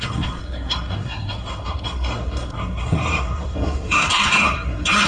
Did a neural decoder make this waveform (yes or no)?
yes